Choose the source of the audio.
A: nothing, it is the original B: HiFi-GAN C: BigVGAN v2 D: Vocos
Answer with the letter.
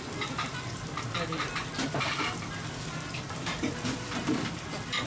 C